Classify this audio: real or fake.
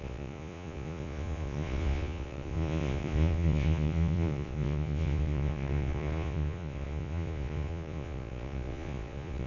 fake